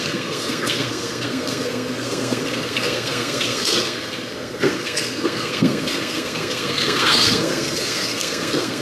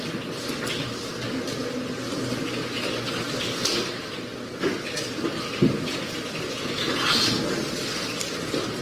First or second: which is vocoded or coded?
first